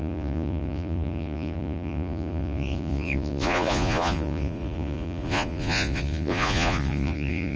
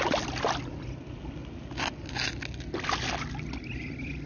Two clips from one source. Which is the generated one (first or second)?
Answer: first